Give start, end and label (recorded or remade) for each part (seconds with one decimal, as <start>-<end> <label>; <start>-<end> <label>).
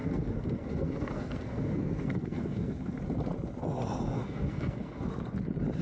0.0-3.0 remade; 3.0-4.1 recorded; 4.1-5.1 remade; 5.1-5.8 recorded